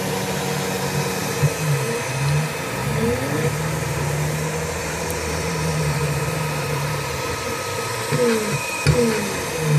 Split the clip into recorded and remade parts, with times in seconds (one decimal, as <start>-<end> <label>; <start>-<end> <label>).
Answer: 0.0-1.2 recorded; 1.2-2.1 remade; 2.1-2.8 recorded; 2.8-3.6 remade; 3.6-4.8 recorded; 4.8-7.5 remade; 7.5-9.8 recorded